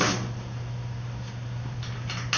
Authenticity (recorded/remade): recorded